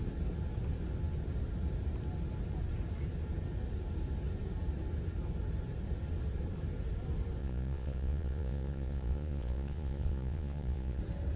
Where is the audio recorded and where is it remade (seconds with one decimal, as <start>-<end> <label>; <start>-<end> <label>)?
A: 0.0-7.4 recorded; 7.4-11.0 remade; 11.0-11.4 recorded